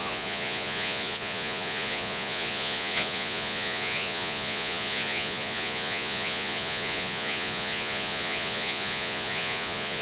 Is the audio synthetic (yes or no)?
yes